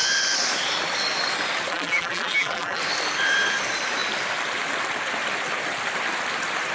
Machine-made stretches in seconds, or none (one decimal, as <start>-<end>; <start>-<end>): 1.7-2.8